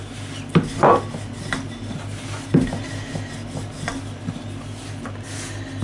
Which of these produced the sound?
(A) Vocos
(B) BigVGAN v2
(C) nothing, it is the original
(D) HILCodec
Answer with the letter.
C